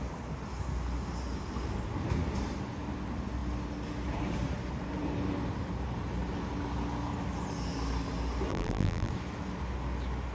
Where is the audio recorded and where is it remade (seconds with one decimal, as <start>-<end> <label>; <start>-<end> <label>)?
0.0-8.5 recorded; 8.5-9.1 remade; 9.1-10.3 recorded